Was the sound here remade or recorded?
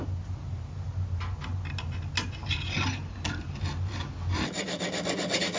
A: recorded